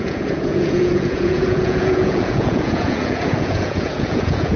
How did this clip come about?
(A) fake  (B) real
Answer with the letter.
A